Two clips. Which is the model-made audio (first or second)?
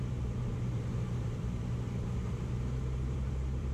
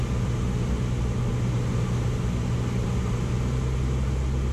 first